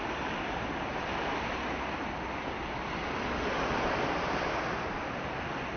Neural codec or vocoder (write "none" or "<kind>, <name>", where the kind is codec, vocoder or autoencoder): none